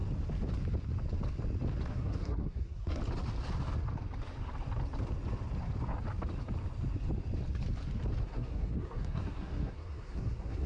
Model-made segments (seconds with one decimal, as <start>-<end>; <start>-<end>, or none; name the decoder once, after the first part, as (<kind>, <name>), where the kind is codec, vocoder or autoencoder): 1.9-3.0 (codec, SNAC); 8.2-10.7

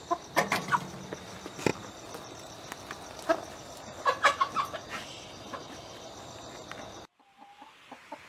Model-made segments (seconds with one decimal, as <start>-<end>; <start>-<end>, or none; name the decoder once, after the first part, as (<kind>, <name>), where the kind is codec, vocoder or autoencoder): none